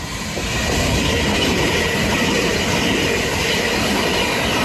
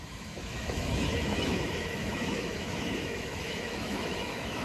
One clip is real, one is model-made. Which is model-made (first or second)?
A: second